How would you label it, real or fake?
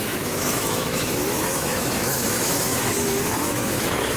fake